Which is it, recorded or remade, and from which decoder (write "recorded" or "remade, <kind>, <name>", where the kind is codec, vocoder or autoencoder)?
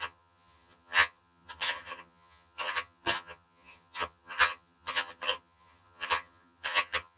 remade, vocoder, HiFi-GAN